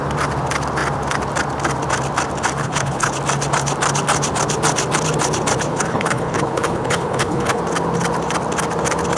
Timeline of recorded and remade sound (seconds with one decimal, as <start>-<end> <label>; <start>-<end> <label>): 0.0-2.6 recorded; 2.6-3.1 remade; 3.1-5.7 recorded; 5.7-7.6 remade; 7.6-9.2 recorded